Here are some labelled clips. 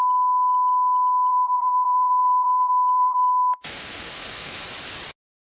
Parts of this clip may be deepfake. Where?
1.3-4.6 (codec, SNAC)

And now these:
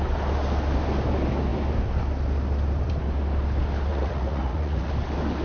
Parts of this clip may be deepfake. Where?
3.9-4.9 (vocoder, Vocos)

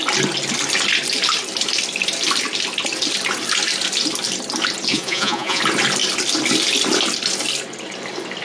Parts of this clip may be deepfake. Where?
4.9-5.6 (vocoder, Vocos)

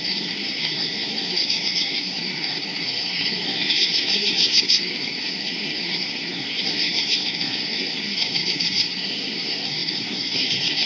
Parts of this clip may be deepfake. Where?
0.0-10.9 (codec, SNAC)

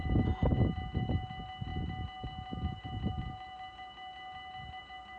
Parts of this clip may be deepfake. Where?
none

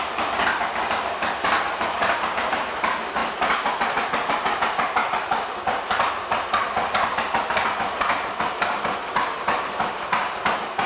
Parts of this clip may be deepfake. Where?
none

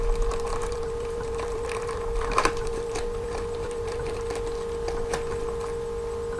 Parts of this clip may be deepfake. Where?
0.5-4.3 (vocoder, BigVGAN v2)

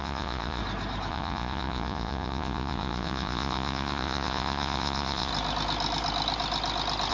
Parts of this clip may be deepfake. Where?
0.0-0.6 (vocoder, Vocos); 1.1-5.3